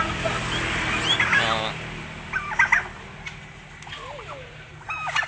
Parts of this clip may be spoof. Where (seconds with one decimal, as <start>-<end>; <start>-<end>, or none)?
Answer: none

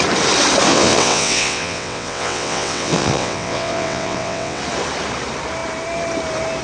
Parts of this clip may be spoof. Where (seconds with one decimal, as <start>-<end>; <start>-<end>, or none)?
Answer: 0.7-4.6